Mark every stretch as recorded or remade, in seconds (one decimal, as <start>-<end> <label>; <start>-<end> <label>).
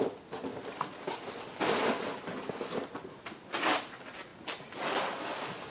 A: 0.0-0.5 recorded; 0.5-1.3 remade; 1.3-4.3 recorded; 4.3-5.2 remade; 5.2-5.7 recorded